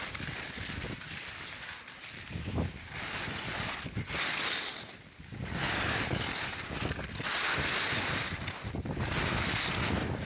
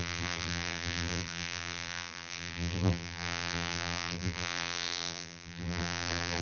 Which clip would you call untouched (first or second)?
first